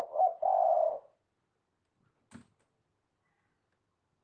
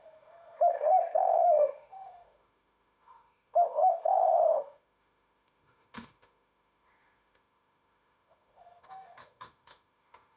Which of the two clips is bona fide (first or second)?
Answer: first